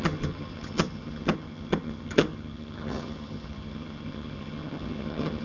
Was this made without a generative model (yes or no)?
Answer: no